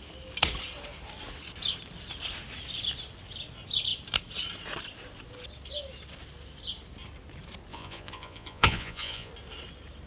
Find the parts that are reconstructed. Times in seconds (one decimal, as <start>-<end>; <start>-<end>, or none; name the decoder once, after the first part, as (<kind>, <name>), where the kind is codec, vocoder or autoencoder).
7.7-9.3 (vocoder, Vocos)